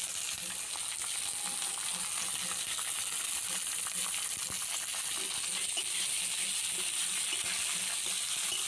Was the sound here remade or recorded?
recorded